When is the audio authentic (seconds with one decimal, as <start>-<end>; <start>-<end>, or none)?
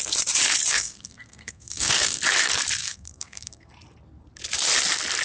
0.0-0.7; 2.2-2.8; 3.7-5.2